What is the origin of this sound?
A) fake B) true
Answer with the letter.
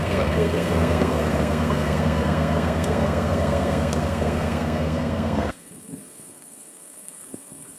A